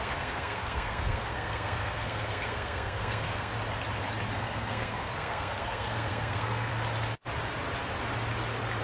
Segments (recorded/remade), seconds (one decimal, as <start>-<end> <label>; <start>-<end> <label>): 0.0-3.5 remade; 3.5-4.4 recorded; 4.4-6.7 remade; 6.7-8.8 recorded